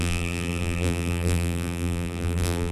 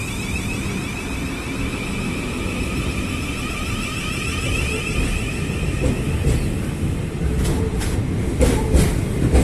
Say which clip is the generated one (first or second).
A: first